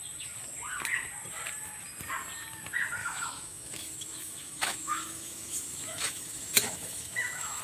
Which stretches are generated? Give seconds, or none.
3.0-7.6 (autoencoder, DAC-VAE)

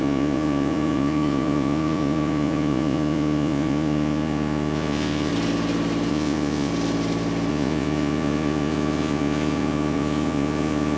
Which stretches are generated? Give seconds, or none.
0.0-5.3 (vocoder, Vocos); 6.1-6.7; 7.5-11.0

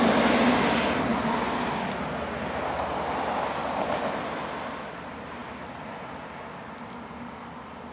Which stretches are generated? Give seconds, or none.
none

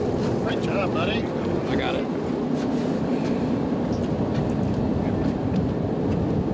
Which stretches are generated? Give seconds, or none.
none